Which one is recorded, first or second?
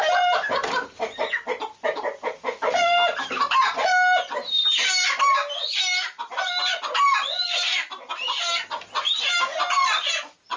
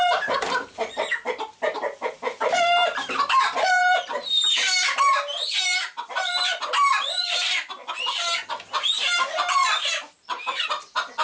first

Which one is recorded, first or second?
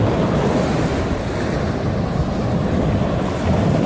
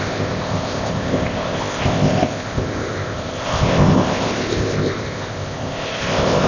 first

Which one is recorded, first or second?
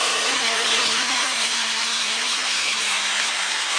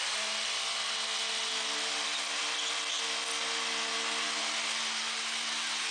second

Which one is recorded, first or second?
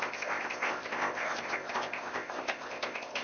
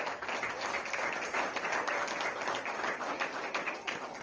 second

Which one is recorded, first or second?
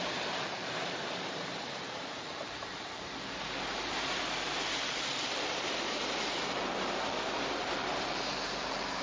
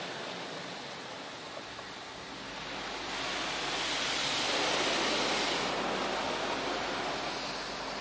second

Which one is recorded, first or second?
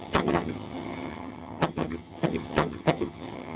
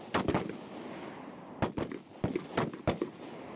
second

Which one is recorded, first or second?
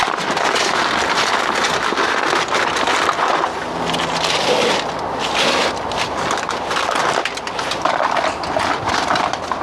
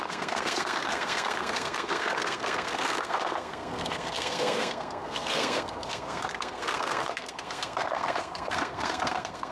first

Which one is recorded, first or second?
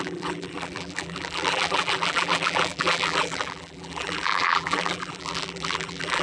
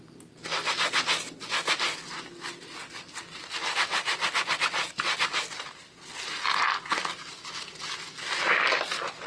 second